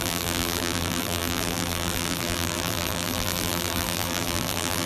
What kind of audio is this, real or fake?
fake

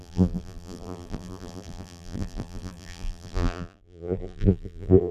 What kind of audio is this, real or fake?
fake